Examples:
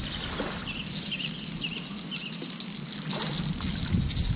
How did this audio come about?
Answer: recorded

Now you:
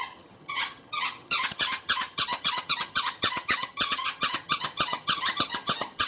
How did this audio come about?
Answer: remade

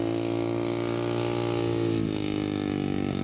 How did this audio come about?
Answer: recorded